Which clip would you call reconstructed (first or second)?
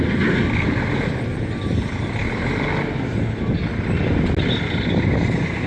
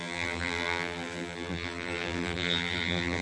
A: second